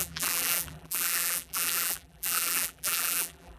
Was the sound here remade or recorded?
remade